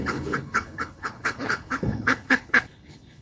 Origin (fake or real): fake